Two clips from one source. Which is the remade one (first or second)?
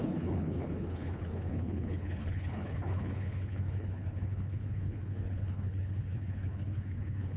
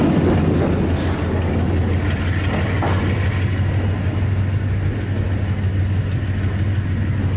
first